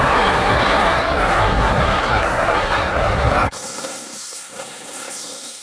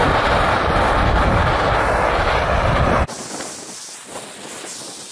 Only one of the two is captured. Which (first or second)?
second